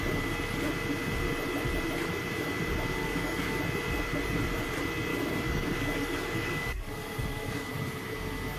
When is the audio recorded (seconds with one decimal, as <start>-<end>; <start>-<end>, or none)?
0.0-3.0; 3.6-5.1; 7.7-8.6